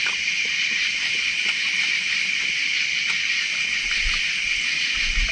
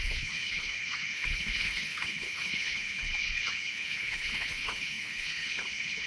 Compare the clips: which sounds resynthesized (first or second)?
second